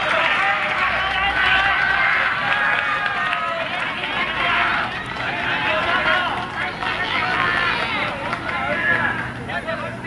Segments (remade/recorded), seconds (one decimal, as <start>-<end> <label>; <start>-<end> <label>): 0.0-6.8 recorded; 6.8-7.8 remade; 7.8-10.1 recorded